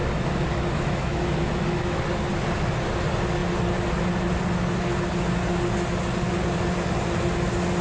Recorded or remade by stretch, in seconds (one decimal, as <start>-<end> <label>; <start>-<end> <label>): 0.0-2.0 remade; 2.0-7.8 recorded